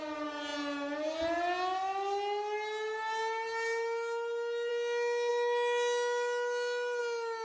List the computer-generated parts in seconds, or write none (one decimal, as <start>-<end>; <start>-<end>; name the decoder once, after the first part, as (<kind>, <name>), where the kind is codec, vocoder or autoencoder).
none